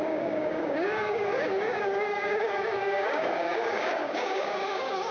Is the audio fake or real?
fake